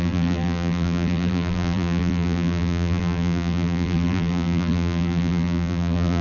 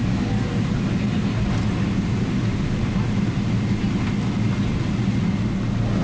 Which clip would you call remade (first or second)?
first